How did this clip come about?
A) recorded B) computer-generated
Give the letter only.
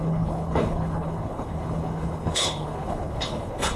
B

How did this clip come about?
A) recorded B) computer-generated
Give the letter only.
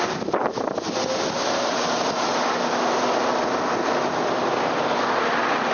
A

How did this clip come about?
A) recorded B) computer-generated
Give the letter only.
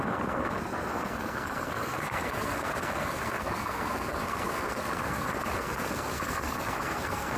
B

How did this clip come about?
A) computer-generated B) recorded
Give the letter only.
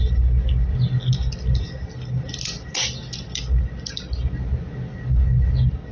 B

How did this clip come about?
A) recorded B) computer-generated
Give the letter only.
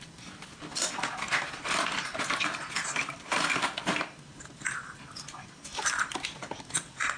A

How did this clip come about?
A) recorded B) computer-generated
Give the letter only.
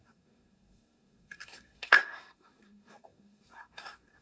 B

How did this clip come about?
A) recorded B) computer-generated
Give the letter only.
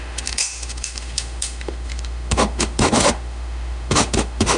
B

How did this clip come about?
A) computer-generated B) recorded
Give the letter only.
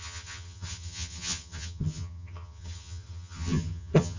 A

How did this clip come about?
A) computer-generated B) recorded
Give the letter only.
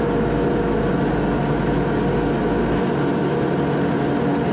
B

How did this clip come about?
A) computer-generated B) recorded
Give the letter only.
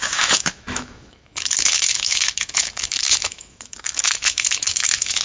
A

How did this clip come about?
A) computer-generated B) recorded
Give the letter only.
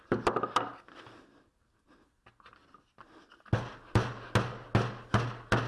B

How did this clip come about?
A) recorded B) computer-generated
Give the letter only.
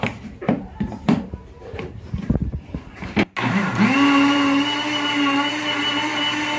A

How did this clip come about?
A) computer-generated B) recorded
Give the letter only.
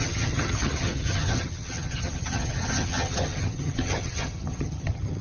A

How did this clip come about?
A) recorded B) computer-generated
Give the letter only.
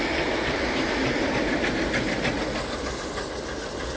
A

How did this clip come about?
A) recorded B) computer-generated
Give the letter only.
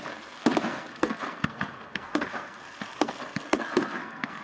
B